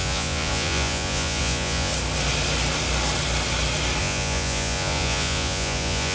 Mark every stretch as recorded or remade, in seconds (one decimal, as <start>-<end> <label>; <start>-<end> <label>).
0.0-1.9 remade; 1.9-4.0 recorded; 4.0-6.1 remade

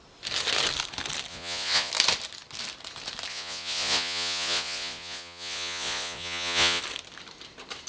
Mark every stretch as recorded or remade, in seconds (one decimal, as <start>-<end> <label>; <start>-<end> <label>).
0.0-1.3 recorded; 1.3-1.9 remade; 1.9-3.3 recorded; 3.3-6.8 remade; 6.8-7.9 recorded